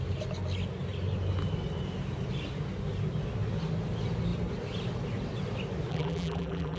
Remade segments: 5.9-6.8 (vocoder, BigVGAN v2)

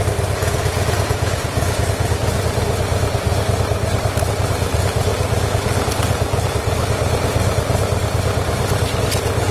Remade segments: 0.4-1.8 (vocoder, Vocos)

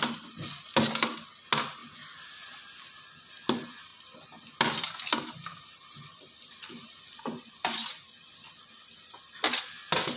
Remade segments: none

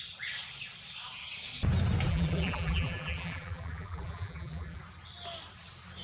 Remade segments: 2.1-4.8 (vocoder, BigVGAN v2)

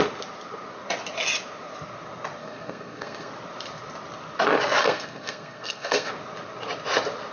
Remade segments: 2.4-3.3 (codec, SNAC); 4.8-6.1